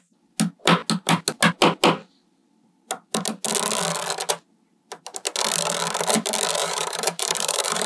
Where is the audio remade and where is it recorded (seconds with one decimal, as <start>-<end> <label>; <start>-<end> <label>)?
0.0-6.6 recorded; 6.6-7.9 remade